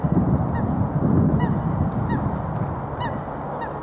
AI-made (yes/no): no